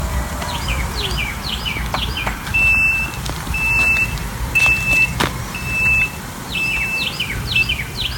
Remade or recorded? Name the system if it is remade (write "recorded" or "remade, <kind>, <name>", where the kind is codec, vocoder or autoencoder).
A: remade, vocoder, BigVGAN v2